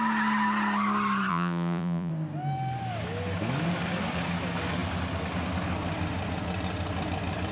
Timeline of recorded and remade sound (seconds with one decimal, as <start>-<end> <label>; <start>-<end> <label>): 0.0-1.3 recorded; 1.3-2.1 remade; 2.1-7.5 recorded